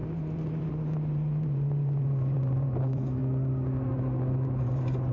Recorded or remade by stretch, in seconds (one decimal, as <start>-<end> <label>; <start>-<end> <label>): 0.0-3.2 remade; 3.2-4.6 recorded; 4.6-5.1 remade